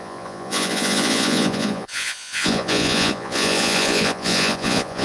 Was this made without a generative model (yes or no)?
no